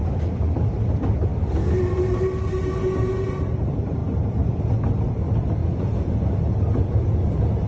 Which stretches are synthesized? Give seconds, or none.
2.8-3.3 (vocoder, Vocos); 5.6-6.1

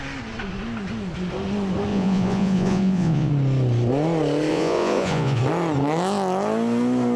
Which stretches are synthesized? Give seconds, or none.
1.9-3.3 (vocoder, Vocos); 4.5-5.4

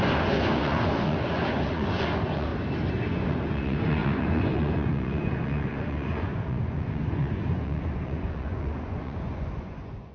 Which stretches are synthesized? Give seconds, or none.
0.0-2.5 (vocoder, Vocos); 3.1-10.1

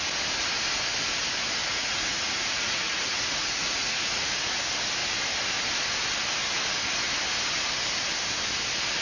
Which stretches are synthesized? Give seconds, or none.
1.6-4.6 (vocoder, Vocos)

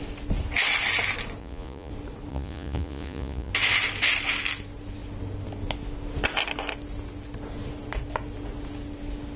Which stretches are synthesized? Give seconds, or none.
1.4-1.9 (vocoder, Vocos); 2.3-3.5